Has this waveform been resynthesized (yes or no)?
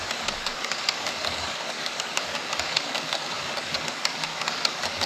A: yes